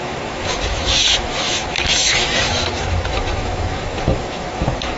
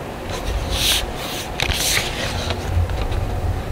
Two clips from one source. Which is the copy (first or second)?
first